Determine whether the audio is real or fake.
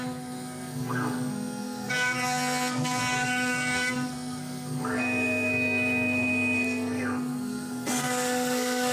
fake